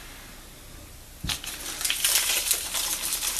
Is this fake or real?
fake